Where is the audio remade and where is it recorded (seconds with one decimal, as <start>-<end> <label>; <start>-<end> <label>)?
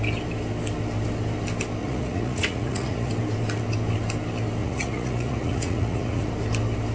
0.0-1.8 recorded; 1.8-3.1 remade; 3.1-4.6 recorded; 4.6-6.3 remade; 6.3-6.9 recorded